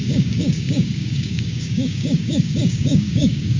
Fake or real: fake